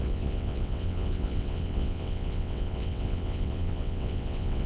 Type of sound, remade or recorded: remade